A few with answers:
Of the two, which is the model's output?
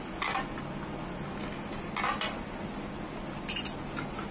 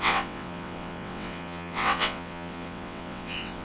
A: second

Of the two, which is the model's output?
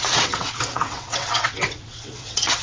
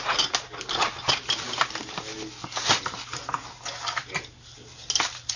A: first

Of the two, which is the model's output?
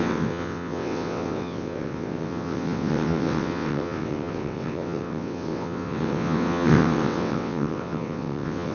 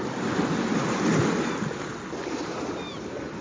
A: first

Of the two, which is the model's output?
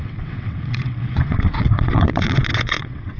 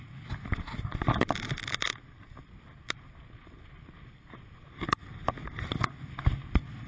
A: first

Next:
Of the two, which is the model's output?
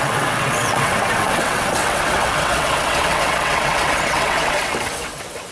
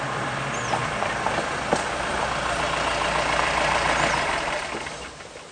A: first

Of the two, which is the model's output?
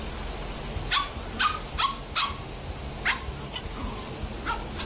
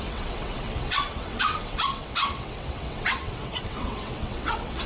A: second